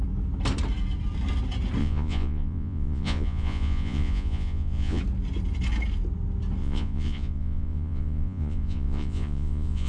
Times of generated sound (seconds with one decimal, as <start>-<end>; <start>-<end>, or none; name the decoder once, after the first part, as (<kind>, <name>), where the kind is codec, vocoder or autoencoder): 1.8-5.0 (vocoder, Vocos); 6.6-9.9